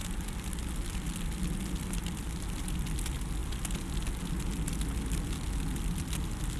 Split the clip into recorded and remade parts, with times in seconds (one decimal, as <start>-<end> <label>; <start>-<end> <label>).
0.0-6.6 recorded